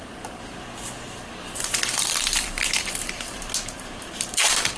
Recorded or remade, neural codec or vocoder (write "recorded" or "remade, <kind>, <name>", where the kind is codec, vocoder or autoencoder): remade, vocoder, BigVGAN v2